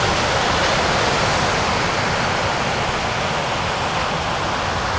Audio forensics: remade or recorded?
recorded